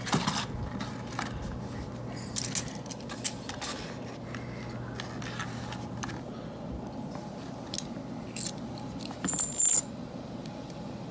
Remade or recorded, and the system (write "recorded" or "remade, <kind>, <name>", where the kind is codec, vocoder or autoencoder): recorded